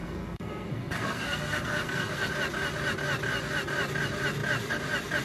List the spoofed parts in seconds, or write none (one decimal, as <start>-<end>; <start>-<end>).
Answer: 0.0-2.3

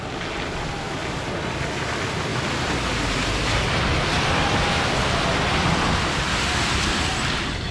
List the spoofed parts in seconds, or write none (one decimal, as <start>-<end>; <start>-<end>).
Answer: none

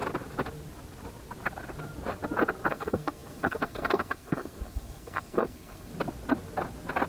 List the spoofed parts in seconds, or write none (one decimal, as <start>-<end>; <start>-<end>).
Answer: 2.7-5.9